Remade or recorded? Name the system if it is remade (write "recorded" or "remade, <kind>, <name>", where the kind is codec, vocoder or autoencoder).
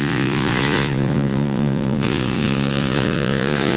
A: remade, vocoder, Vocos